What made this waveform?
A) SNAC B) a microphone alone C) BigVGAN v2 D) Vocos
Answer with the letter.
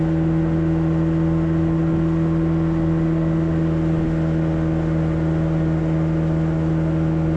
B